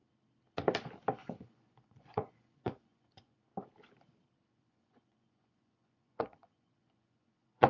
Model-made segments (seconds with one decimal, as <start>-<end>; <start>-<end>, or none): 1.2-3.5; 4.5-7.7